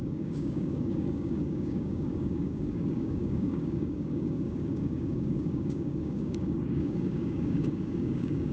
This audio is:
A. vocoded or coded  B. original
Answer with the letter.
A